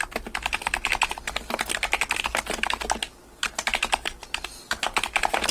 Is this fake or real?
real